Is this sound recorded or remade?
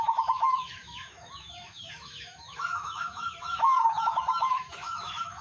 remade